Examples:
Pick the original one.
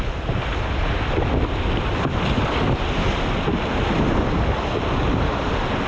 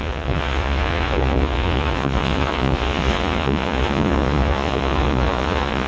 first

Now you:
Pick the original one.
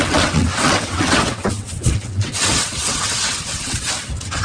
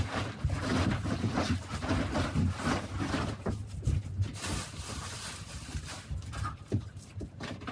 second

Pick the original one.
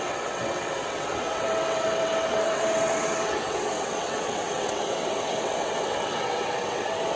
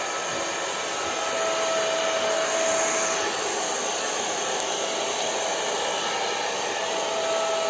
second